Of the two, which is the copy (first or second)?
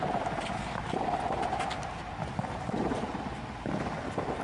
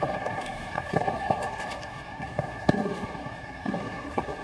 second